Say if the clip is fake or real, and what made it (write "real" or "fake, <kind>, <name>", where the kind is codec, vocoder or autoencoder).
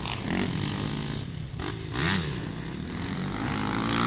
real